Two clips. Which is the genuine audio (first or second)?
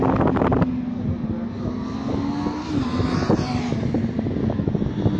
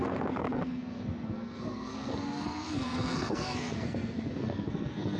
first